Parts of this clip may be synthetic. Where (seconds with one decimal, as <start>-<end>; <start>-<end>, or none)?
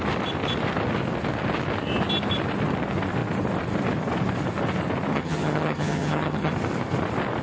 5.1-6.5